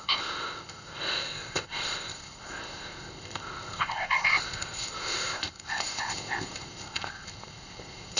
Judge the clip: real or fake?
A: fake